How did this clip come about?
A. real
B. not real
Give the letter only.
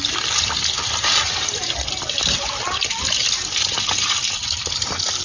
A